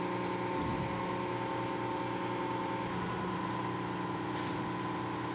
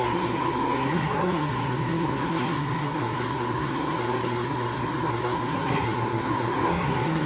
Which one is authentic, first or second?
first